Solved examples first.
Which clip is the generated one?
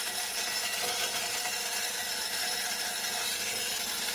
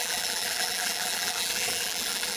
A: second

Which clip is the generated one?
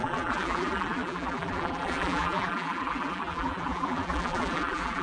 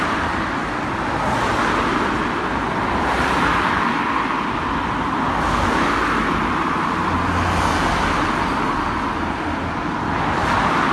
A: first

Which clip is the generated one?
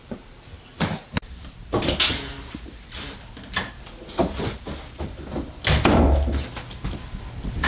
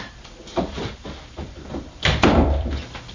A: second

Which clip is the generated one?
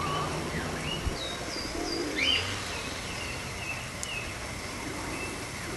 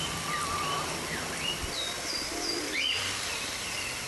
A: second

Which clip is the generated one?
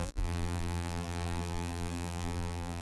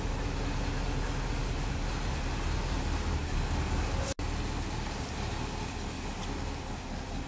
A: first